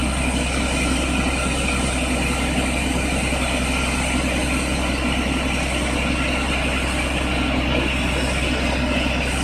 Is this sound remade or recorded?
recorded